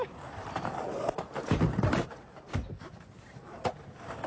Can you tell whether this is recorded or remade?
remade